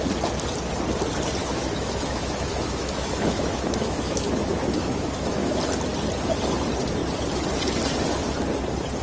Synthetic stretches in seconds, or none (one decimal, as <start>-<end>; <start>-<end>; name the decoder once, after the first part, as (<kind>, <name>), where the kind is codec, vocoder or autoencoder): 1.4-5.6 (autoencoder, DAC-VAE)